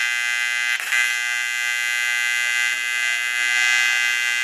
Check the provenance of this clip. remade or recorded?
recorded